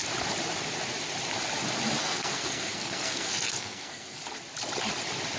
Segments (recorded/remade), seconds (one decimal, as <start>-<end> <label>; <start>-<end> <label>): 0.0-2.0 recorded; 2.0-4.2 remade; 4.2-5.4 recorded